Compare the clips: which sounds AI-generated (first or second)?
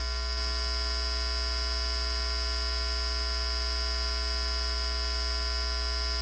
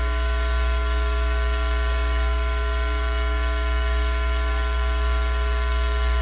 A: second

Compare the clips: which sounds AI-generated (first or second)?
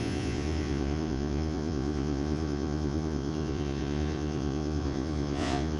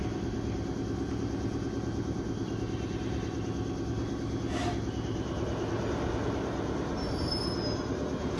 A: first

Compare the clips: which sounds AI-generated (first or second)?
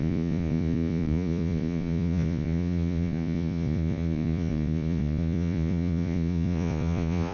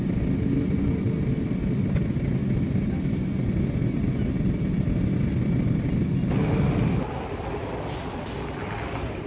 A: first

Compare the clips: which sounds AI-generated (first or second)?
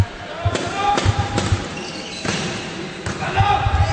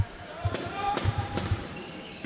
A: second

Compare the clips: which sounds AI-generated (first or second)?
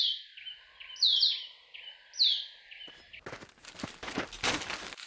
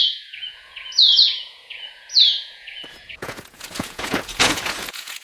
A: second